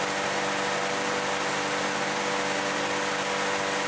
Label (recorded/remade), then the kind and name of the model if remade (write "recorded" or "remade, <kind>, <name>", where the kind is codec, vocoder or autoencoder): recorded